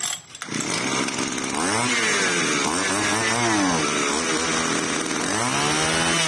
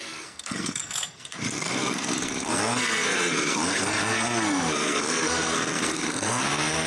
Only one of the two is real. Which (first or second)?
first